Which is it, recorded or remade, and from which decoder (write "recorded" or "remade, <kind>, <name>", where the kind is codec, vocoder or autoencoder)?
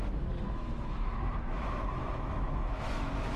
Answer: remade, autoencoder, DAC-VAE